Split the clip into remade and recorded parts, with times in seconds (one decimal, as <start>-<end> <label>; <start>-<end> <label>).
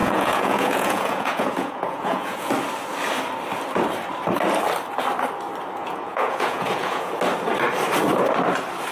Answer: 0.0-2.5 remade; 2.5-5.8 recorded; 5.8-7.1 remade; 7.1-8.9 recorded